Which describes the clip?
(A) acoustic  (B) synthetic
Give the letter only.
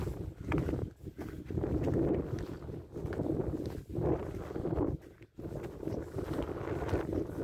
A